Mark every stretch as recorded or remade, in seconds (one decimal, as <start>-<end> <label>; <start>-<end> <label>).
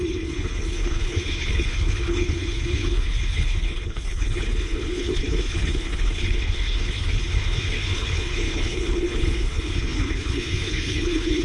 0.0-11.4 remade